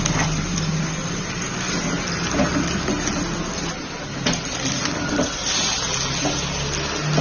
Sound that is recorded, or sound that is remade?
recorded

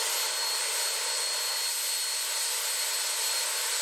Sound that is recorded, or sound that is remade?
recorded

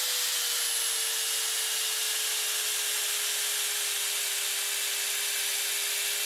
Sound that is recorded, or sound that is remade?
recorded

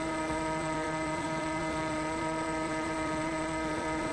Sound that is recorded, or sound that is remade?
remade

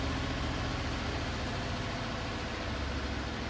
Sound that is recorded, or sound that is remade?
recorded